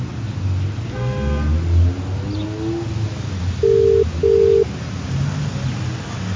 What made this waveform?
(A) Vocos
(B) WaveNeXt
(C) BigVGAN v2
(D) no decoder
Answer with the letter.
D